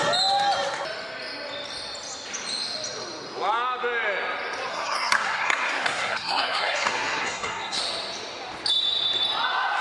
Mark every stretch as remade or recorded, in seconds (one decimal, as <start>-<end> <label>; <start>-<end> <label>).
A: 0.0-4.7 recorded; 4.7-7.8 remade; 7.8-9.8 recorded